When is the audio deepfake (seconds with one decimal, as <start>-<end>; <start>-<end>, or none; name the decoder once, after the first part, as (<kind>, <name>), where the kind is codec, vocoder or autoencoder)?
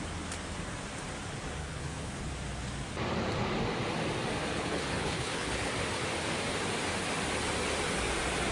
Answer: 1.6-2.3 (codec, HILCodec); 4.5-5.7